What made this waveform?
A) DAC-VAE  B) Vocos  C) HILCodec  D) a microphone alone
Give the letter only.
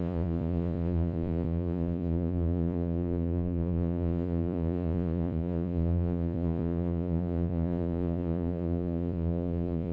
B